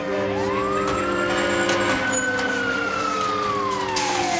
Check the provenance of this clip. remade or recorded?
recorded